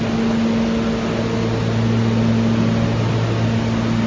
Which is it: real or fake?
real